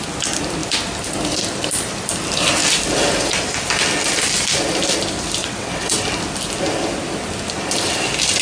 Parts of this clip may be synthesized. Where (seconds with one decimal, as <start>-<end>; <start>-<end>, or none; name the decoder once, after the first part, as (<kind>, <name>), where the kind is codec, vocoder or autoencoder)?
5.4-6.0 (vocoder, WaveNeXt)